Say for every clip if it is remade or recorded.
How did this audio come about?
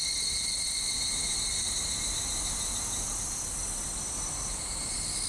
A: recorded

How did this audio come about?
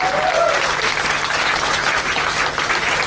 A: recorded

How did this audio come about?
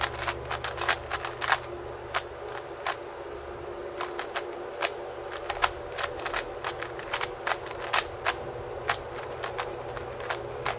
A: recorded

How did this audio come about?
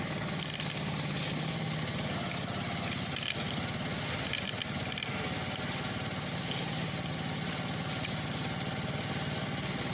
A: recorded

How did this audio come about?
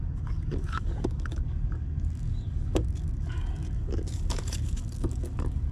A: remade